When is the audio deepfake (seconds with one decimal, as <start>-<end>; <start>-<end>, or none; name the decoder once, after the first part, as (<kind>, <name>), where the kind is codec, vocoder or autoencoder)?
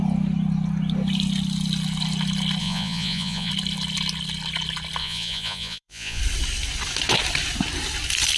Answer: 2.6-3.5 (vocoder, Vocos); 5.0-6.2